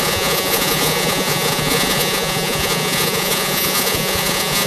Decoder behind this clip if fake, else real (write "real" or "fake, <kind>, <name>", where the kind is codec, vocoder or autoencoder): fake, vocoder, Vocos